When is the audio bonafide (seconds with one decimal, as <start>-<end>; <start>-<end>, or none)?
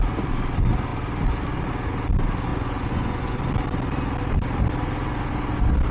0.0-2.5; 3.4-5.9